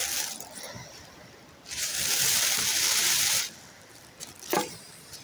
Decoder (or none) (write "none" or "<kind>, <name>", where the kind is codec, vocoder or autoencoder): vocoder, BigVGAN v2